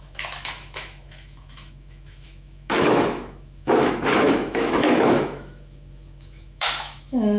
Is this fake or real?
fake